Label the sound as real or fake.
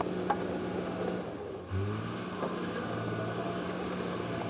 real